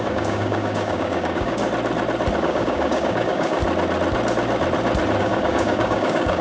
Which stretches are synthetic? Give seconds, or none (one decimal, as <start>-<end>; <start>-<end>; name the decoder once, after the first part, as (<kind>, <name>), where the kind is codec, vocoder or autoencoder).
0.0-1.6 (codec, DAC); 2.4-3.6; 5.2-6.4